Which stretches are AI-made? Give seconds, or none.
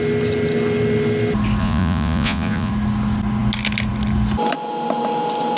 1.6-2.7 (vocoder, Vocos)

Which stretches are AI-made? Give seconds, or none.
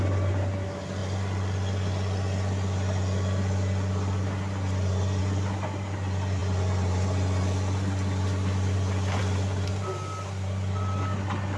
none